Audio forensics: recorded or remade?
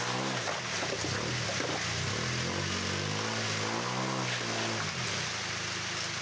recorded